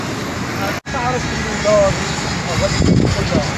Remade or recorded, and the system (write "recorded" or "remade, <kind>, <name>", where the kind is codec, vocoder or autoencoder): recorded